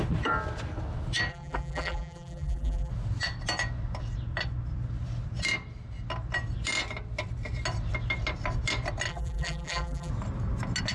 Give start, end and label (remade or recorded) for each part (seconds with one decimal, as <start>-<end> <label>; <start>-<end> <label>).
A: 0.0-1.3 recorded; 1.3-2.9 remade; 2.9-9.1 recorded; 9.1-10.1 remade; 10.1-10.9 recorded